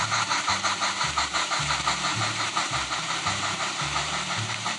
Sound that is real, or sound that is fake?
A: fake